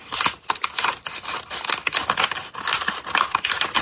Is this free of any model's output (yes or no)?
yes